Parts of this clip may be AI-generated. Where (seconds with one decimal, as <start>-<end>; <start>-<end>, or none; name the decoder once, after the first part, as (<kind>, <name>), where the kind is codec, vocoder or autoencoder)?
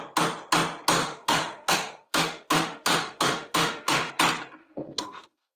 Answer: 1.0-4.1 (autoencoder, DAC-VAE); 4.6-5.6